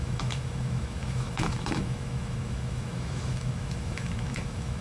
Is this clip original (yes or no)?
no